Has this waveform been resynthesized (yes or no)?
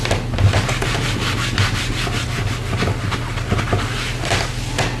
no